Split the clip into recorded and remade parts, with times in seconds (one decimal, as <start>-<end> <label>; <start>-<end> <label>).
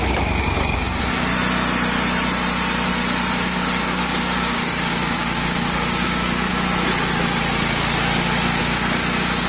0.0-1.3 remade; 1.3-3.3 recorded; 3.3-6.5 remade; 6.5-8.6 recorded; 8.6-9.5 remade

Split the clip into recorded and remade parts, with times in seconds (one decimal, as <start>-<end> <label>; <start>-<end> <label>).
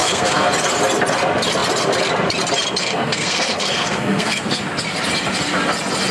0.0-0.5 remade; 0.5-2.8 recorded; 2.8-4.6 remade; 4.6-6.1 recorded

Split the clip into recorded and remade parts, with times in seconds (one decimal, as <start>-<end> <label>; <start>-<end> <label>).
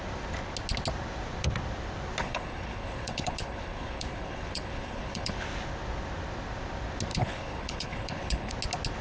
0.0-2.2 recorded; 2.2-5.4 remade; 5.4-7.1 recorded; 7.1-8.5 remade; 8.5-9.0 recorded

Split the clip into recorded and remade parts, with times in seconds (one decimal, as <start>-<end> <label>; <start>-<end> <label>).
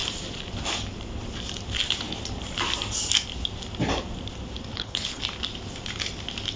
0.0-4.7 recorded; 4.7-5.2 remade; 5.2-6.6 recorded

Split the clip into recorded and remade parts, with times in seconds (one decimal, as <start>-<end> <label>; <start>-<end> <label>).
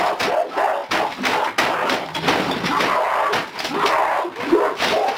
0.0-5.2 recorded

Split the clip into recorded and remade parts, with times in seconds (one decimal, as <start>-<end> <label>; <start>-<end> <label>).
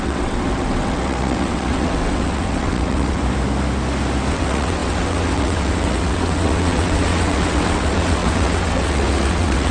0.0-3.2 remade; 3.2-4.3 recorded; 4.3-9.7 remade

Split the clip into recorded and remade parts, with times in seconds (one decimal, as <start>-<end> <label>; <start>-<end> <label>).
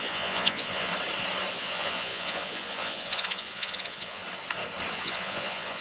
0.0-0.9 remade; 0.9-1.5 recorded; 1.5-4.2 remade; 4.2-4.9 recorded; 4.9-5.8 remade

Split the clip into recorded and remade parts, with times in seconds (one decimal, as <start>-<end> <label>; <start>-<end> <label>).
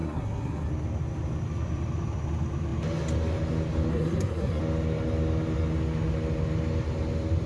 0.0-0.7 remade; 0.7-3.9 recorded; 3.9-4.6 remade; 4.6-7.5 recorded